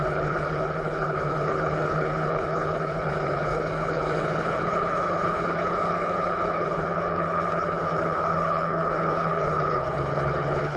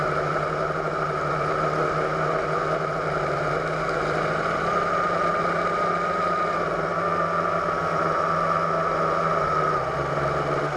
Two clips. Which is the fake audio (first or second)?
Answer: first